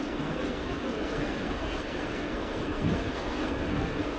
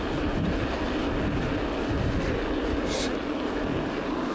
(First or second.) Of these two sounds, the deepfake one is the first